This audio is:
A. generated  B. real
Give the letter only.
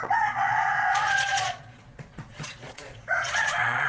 A